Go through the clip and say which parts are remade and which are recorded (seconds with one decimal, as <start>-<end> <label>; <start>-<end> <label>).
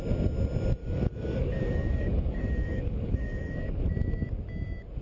0.0-0.8 recorded; 0.8-3.8 remade; 3.8-5.0 recorded